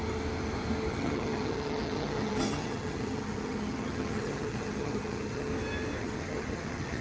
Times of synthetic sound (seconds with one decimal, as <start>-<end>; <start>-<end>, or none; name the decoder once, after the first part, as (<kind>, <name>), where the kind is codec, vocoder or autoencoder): 0.9-5.5 (vocoder, HiFi-GAN); 6.0-7.0